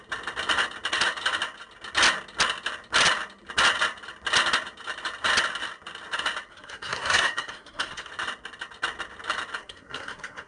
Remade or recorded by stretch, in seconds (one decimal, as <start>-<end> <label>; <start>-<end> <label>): 0.0-6.5 recorded; 6.5-8.1 remade; 8.1-9.6 recorded; 9.6-10.5 remade